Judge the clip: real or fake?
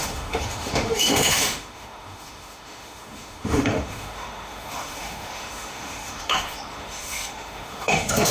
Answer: fake